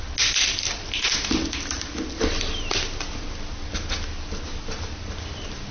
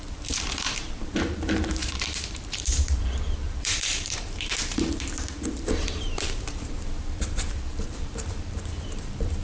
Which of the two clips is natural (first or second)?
first